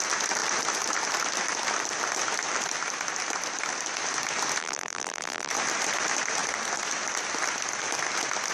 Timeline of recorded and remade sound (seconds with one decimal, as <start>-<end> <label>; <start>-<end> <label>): 0.0-4.6 recorded; 4.6-5.5 remade; 5.5-8.5 recorded